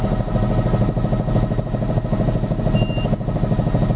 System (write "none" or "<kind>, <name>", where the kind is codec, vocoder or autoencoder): none